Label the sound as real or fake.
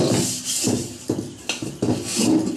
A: real